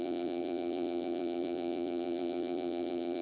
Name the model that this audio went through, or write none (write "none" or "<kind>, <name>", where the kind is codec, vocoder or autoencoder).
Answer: vocoder, BigVGAN v2